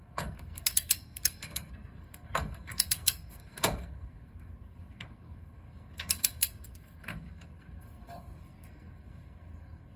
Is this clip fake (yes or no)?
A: yes